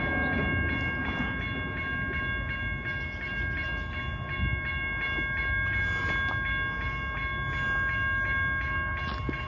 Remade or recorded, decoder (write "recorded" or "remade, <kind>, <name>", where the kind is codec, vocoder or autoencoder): recorded